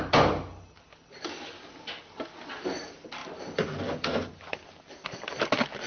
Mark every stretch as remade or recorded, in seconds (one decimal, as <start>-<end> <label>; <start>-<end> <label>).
0.0-5.9 recorded